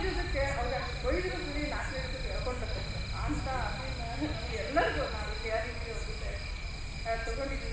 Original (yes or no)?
yes